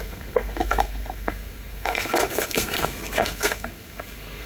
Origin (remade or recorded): remade